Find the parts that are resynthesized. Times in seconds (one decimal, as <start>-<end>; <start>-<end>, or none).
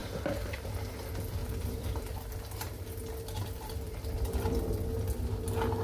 1.4-4.9